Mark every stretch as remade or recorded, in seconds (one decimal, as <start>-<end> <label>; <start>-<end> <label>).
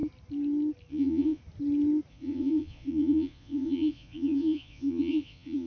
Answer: 0.0-0.9 recorded; 0.9-1.4 remade; 1.4-2.1 recorded; 2.1-5.7 remade